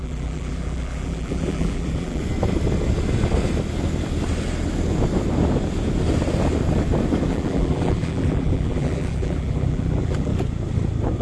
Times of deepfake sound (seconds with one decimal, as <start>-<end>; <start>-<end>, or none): 0.0-2.2; 7.3-10.3